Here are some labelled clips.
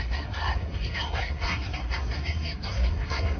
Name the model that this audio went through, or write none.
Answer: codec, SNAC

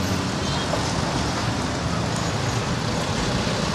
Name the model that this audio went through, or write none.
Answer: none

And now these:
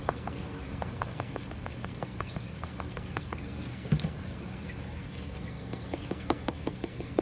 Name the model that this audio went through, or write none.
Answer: codec, SNAC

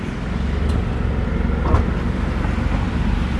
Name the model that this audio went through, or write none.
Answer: none